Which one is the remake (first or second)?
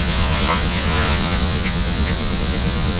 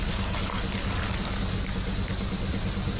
first